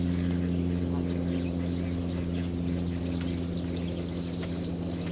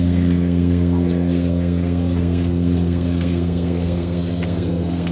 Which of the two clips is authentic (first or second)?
first